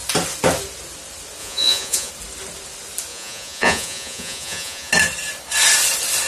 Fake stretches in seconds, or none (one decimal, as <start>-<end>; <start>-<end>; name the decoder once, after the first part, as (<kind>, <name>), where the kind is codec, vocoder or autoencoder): 1.4-2.1 (vocoder, Vocos); 3.1-4.9